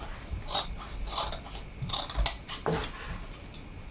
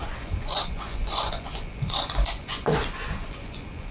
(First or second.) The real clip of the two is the first